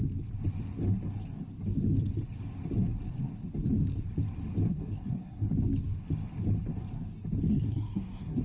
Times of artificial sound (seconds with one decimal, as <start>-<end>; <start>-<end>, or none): 4.7-5.5; 7.5-8.4